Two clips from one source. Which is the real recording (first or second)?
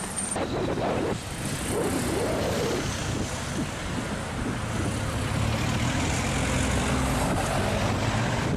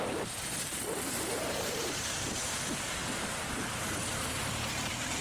first